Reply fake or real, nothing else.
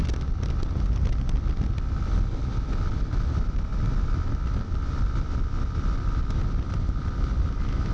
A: real